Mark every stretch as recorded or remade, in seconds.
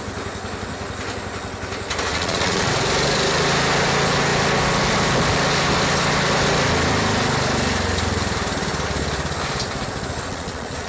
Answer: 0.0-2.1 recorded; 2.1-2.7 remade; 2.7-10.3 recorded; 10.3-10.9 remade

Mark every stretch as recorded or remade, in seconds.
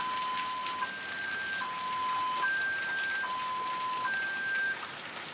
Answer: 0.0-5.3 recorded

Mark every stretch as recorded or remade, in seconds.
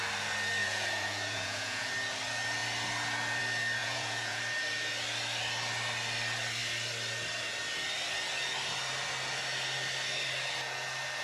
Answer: 0.0-0.6 recorded; 0.6-1.9 remade; 1.9-3.8 recorded; 3.8-4.4 remade; 4.4-11.2 recorded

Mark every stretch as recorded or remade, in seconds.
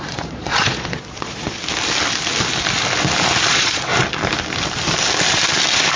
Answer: 0.0-1.6 remade; 1.6-3.5 recorded; 3.5-3.9 remade; 3.9-6.0 recorded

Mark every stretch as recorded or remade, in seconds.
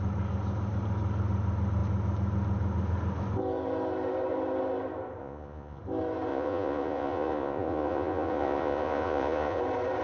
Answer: 0.0-5.2 recorded; 5.2-5.8 remade; 5.8-6.3 recorded; 6.3-9.6 remade; 9.6-10.0 recorded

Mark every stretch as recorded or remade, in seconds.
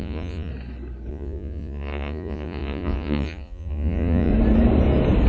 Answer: 0.0-0.5 remade; 0.5-1.1 recorded; 1.1-4.3 remade; 4.3-5.3 recorded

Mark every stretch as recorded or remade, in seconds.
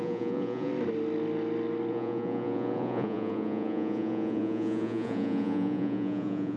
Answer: 0.0-0.7 remade; 0.7-1.9 recorded; 1.9-6.6 remade